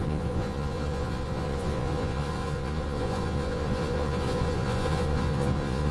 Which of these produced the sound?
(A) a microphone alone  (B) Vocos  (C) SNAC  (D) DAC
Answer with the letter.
B